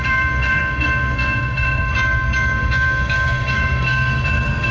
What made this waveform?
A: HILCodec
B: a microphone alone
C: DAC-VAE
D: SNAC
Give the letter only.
D